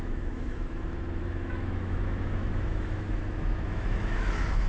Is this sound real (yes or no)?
no